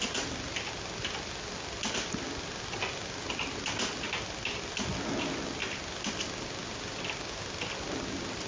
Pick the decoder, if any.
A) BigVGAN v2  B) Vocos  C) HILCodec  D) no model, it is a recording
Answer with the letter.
D